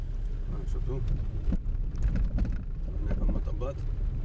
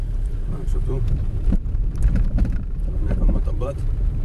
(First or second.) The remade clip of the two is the second